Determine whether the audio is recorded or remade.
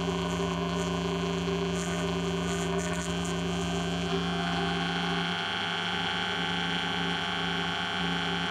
remade